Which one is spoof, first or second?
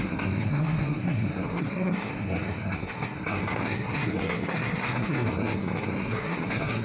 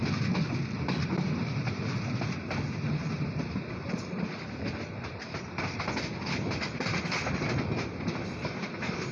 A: first